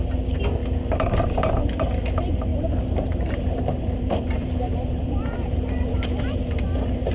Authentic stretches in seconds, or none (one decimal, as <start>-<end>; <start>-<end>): 0.0-2.5; 6.5-7.1